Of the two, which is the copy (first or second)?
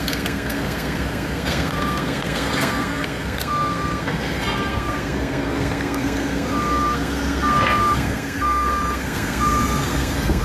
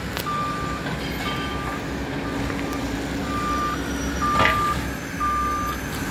first